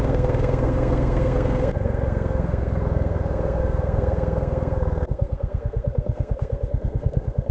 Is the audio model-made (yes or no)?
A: yes